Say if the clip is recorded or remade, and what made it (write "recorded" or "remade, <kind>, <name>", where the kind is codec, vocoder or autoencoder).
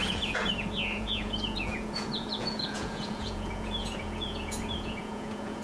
remade, vocoder, Vocos